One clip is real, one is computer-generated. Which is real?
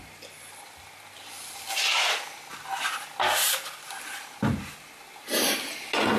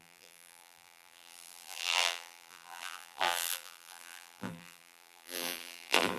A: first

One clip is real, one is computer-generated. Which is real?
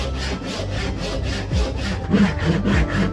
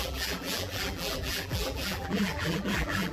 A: first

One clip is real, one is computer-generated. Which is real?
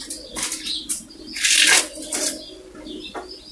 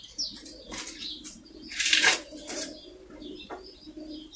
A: first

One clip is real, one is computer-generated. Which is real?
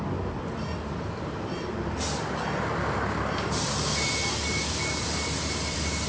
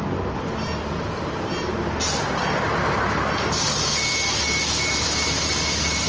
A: second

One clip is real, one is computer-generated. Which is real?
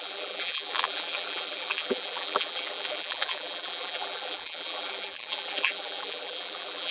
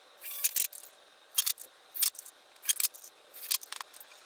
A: second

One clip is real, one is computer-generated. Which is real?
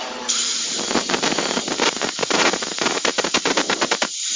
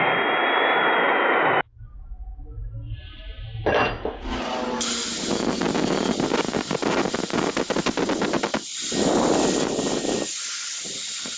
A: second